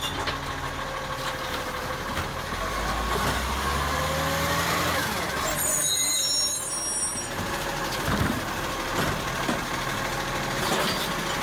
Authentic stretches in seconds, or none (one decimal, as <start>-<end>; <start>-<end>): 0.0-11.4